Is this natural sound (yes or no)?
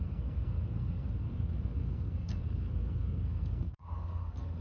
no